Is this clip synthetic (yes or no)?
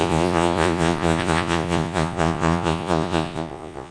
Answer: yes